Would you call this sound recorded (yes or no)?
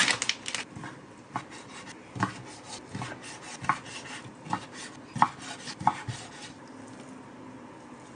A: yes